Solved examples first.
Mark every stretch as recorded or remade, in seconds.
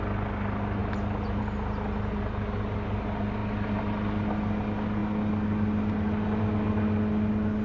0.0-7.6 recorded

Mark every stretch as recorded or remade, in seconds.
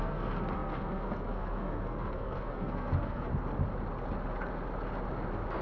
0.0-3.3 remade; 3.3-5.6 recorded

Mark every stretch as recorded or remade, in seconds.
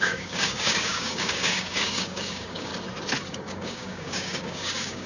0.0-2.7 remade; 2.7-3.3 recorded; 3.3-5.1 remade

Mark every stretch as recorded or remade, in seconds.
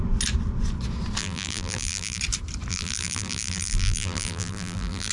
0.0-1.2 recorded; 1.2-2.2 remade; 2.2-2.7 recorded; 2.7-5.1 remade